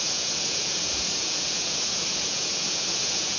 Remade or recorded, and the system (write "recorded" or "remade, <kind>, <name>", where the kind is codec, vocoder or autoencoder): remade, vocoder, Vocos